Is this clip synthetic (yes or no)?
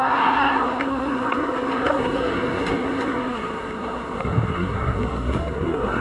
yes